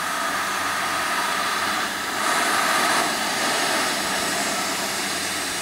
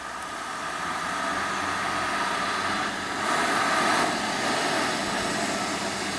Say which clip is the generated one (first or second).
first